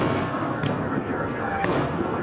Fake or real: fake